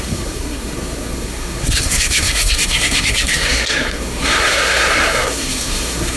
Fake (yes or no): yes